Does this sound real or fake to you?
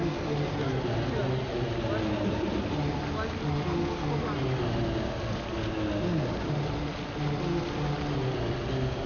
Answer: real